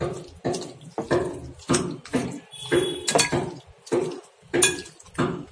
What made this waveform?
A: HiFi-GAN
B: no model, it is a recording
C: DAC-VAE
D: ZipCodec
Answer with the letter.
B